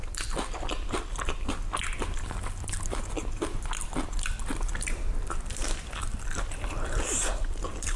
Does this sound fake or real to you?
fake